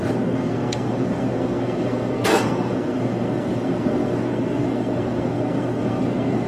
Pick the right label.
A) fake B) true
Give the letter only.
A